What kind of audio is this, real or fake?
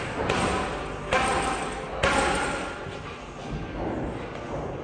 real